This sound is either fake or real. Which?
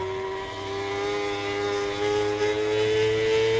real